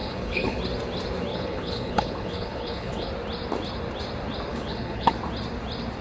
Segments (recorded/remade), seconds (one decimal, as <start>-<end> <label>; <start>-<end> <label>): 0.0-0.6 remade; 0.6-1.3 recorded; 1.3-3.1 remade; 3.1-4.5 recorded; 4.5-5.1 remade; 5.1-6.0 recorded